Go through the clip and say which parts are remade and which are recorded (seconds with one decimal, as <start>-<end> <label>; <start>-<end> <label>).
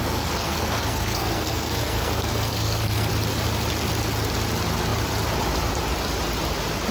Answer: 0.0-3.1 remade; 3.1-6.9 recorded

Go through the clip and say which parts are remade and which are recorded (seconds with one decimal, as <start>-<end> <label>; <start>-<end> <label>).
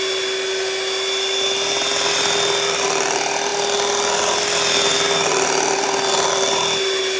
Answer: 0.0-7.2 recorded